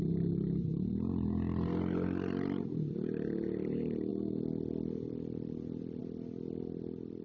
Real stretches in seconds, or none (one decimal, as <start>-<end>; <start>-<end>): 0.0-4.1; 6.0-7.2